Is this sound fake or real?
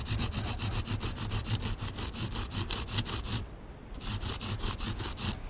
real